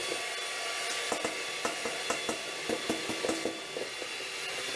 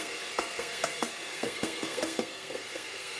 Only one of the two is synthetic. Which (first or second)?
second